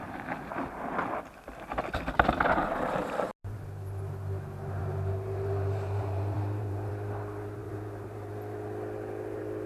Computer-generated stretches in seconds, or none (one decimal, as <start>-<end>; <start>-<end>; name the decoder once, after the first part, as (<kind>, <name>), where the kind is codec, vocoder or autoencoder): 4.8-6.9 (vocoder, BigVGAN v2); 7.6-8.3